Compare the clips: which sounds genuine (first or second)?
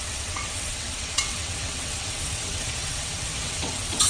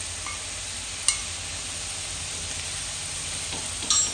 second